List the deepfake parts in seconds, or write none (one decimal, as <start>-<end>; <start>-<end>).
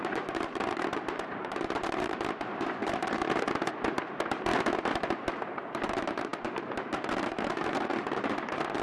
0.0-3.2; 5.5-8.8